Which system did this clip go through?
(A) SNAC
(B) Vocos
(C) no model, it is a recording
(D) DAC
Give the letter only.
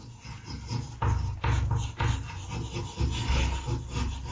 C